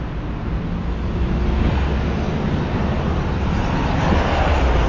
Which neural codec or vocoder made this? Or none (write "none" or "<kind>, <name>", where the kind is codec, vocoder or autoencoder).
none